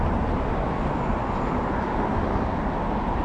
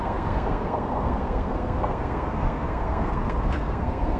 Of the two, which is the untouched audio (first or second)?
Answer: first